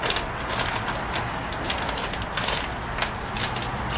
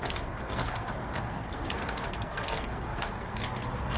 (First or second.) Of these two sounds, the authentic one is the first